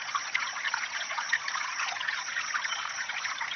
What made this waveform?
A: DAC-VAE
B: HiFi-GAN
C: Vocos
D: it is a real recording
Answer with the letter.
C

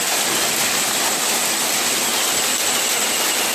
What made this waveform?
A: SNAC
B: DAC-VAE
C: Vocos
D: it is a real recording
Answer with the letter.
D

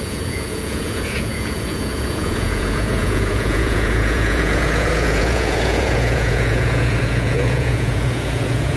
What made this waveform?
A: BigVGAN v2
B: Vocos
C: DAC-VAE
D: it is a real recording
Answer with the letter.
B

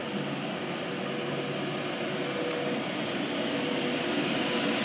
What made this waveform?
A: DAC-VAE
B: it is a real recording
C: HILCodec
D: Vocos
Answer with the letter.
B